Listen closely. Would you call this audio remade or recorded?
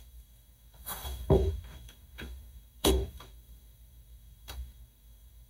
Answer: remade